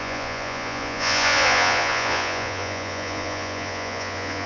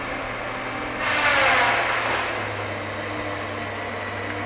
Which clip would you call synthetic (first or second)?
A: first